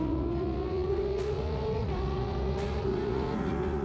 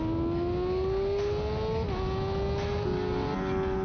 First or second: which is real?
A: second